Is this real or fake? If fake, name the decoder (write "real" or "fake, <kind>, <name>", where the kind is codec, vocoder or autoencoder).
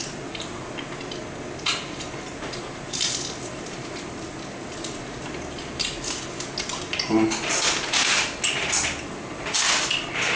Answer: real